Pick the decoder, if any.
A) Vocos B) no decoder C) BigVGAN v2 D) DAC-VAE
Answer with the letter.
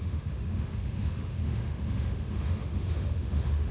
D